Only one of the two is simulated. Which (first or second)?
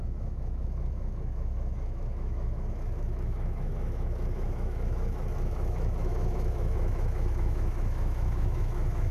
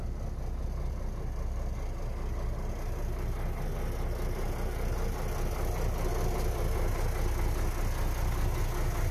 first